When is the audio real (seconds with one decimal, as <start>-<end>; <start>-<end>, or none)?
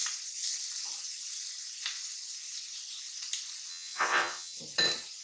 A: 0.0-3.7; 4.6-5.2